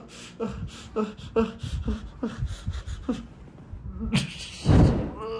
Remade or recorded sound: recorded